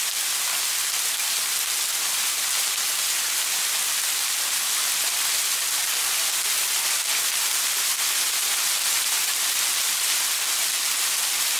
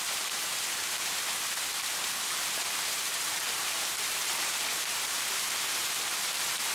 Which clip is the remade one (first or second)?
second